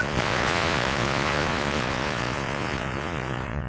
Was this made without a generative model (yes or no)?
no